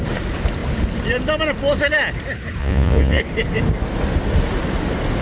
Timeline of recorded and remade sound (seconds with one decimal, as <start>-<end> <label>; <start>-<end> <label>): 0.0-2.6 recorded; 2.6-3.2 remade; 3.2-5.2 recorded